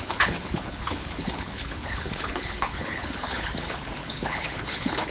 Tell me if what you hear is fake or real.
fake